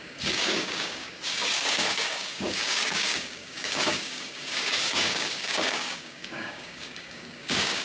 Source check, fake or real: fake